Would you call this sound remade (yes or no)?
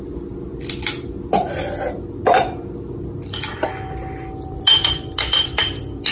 no